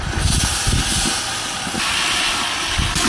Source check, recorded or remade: recorded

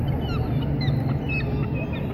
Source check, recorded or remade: recorded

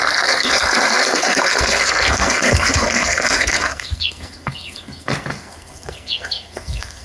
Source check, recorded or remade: remade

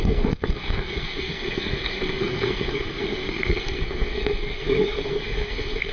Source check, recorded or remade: remade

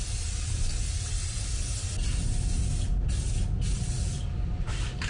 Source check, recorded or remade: recorded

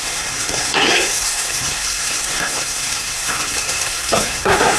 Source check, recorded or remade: remade